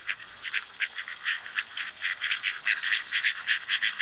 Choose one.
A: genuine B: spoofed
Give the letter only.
B